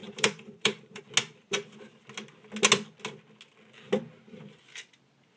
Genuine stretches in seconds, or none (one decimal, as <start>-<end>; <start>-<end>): 1.0-5.4